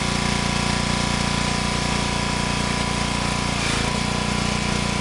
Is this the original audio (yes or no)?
yes